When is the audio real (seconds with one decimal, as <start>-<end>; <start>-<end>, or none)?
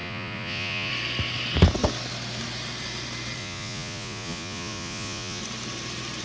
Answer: 0.9-3.4; 5.4-6.2